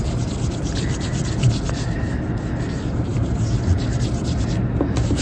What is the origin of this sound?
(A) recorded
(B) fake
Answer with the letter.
A